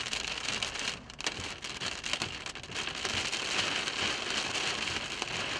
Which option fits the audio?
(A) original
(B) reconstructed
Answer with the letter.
A